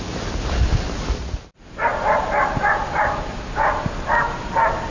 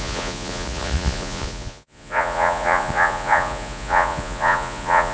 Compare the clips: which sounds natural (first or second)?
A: first